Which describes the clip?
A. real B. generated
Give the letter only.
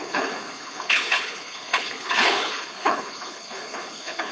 B